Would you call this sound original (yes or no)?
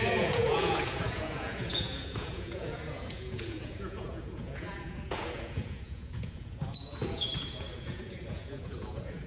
no